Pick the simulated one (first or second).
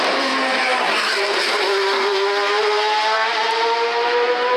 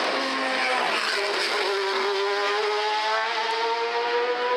first